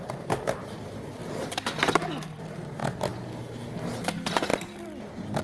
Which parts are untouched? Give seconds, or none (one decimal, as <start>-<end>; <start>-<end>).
1.2-1.8; 4.5-5.4